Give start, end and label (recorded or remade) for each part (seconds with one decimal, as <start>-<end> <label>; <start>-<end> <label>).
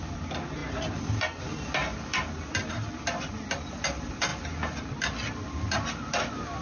0.0-6.6 recorded